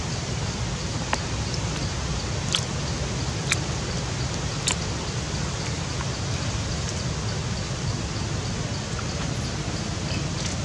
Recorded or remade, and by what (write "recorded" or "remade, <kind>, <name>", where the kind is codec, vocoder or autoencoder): recorded